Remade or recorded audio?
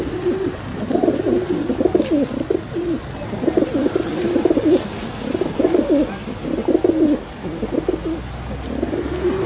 recorded